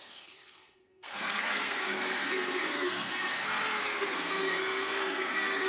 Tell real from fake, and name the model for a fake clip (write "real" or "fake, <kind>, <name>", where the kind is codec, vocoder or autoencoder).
fake, codec, SNAC